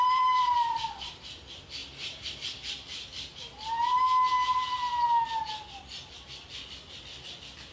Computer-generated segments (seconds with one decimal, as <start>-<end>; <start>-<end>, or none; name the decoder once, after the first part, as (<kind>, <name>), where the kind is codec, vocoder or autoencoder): 0.0-1.8 (vocoder, BigVGAN v2); 2.3-3.1; 7.2-7.7